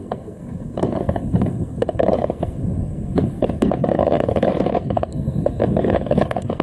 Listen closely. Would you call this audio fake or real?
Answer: fake